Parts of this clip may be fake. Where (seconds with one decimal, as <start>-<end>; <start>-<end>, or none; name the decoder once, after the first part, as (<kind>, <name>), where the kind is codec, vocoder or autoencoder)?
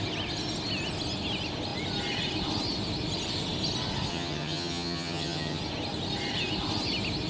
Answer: 4.1-5.6 (vocoder, HiFi-GAN)